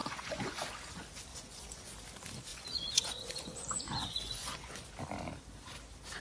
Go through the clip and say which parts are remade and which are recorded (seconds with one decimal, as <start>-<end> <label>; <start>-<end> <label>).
0.0-0.6 remade; 0.6-1.3 recorded; 1.3-1.9 remade; 1.9-2.5 recorded; 2.5-4.9 remade; 4.9-6.2 recorded